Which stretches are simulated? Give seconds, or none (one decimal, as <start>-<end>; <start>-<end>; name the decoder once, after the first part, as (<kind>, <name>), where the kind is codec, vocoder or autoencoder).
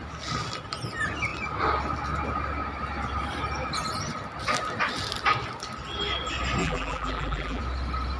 6.6-7.6 (vocoder, BigVGAN v2)